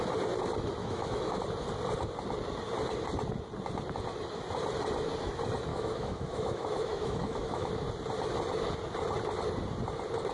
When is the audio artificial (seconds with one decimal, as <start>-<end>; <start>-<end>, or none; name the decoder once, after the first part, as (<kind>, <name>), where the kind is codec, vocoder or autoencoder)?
0.8-1.4 (autoencoder, DAC-VAE); 5.7-7.7